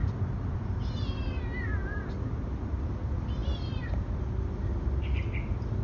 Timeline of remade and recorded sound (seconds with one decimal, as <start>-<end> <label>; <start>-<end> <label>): 0.0-1.3 remade; 1.3-1.8 recorded; 1.8-3.8 remade; 3.8-5.8 recorded